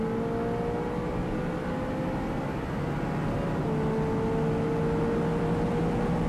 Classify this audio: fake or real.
real